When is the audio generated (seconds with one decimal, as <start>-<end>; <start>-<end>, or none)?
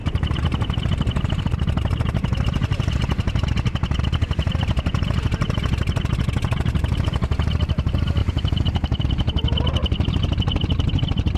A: 0.0-1.4; 8.2-9.0